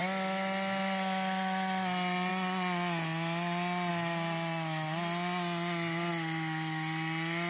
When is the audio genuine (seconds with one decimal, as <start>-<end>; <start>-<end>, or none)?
0.0-7.5